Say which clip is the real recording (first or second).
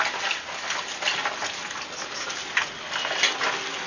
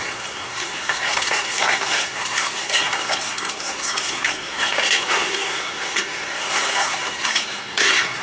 first